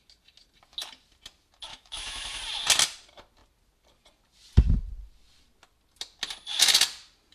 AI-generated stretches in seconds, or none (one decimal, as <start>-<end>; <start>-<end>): 1.7-2.4